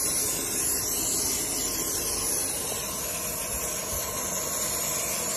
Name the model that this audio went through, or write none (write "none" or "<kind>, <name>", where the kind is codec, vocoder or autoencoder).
none